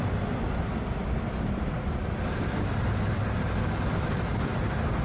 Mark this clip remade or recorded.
recorded